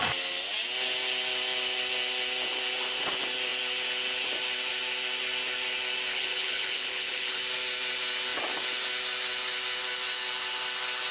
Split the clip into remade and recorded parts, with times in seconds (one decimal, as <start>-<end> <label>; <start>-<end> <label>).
0.0-6.1 recorded; 6.1-7.4 remade; 7.4-11.1 recorded

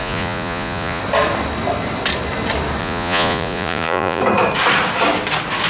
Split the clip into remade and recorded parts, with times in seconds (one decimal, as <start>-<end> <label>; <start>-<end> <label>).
0.0-1.0 remade; 1.0-2.8 recorded; 2.8-4.2 remade; 4.2-5.7 recorded

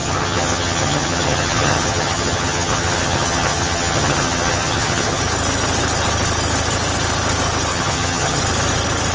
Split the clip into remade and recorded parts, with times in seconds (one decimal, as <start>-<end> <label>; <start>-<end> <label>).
0.0-5.2 remade; 5.2-7.7 recorded; 7.7-8.4 remade; 8.4-9.1 recorded

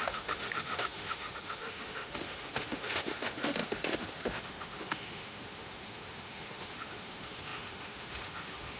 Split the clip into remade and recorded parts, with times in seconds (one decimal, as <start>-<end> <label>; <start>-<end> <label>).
0.0-8.8 remade

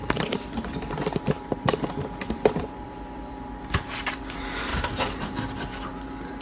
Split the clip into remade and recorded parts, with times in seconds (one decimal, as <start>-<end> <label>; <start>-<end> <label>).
0.0-3.8 remade; 3.8-6.4 recorded

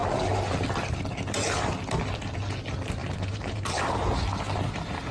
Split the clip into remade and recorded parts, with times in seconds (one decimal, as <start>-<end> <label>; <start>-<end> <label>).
0.0-3.0 recorded; 3.0-3.7 remade; 3.7-5.1 recorded